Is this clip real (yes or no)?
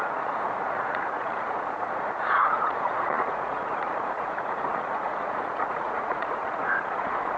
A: no